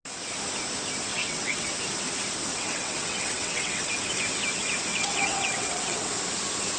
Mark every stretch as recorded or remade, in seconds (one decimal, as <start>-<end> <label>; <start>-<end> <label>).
0.0-1.1 recorded; 1.1-1.7 remade; 1.7-2.5 recorded; 2.5-3.9 remade; 3.9-4.9 recorded; 4.9-6.1 remade; 6.1-6.8 recorded